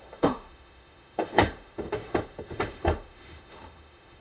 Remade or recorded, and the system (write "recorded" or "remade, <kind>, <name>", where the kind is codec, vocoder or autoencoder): remade, autoencoder, DAC-VAE